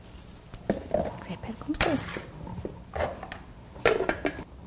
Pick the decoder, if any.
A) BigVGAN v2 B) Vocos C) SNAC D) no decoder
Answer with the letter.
D